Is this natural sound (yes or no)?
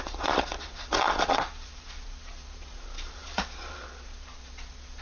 no